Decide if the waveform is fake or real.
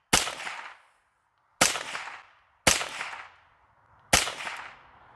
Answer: real